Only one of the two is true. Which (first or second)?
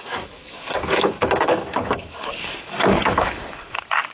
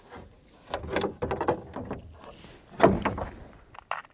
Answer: second